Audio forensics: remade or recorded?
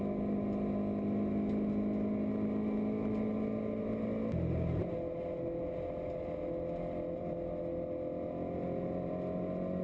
recorded